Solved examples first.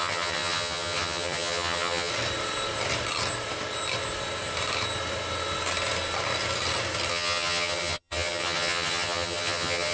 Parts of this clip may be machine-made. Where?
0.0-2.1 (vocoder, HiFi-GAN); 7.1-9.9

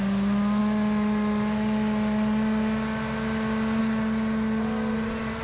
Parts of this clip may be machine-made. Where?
none

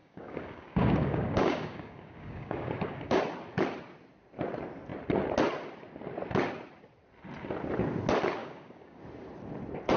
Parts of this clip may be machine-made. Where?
0.0-3.2 (codec, DAC); 8.4-9.0

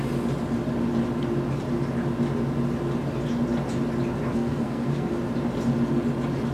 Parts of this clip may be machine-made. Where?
4.3-5.1 (codec, SNAC)

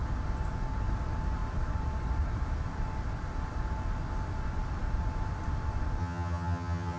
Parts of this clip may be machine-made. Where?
6.0-7.0 (vocoder, HiFi-GAN)

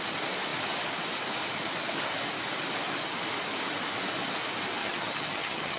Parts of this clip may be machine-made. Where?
4.8-5.8 (vocoder, HiFi-GAN)

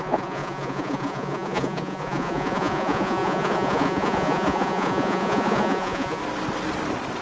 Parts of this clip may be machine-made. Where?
0.0-6.2 (vocoder, Vocos)